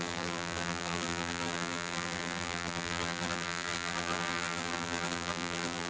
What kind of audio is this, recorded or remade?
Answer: remade